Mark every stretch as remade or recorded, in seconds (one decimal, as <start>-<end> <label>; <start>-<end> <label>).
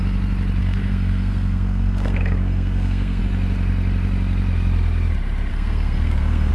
0.0-0.6 recorded; 0.6-3.2 remade; 3.2-5.5 recorded; 5.5-6.5 remade